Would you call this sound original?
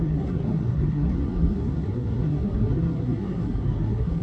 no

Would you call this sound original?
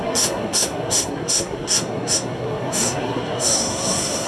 no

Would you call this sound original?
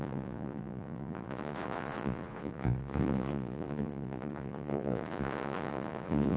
no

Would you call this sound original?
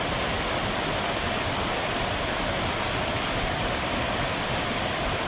no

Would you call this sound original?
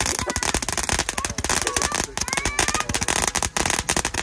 yes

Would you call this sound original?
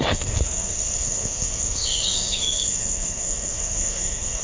no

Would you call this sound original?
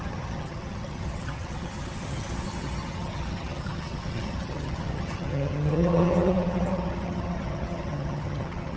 no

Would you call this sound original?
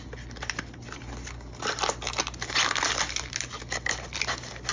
yes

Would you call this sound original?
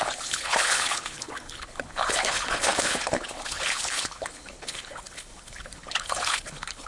no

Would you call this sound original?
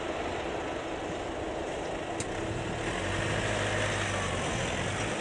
yes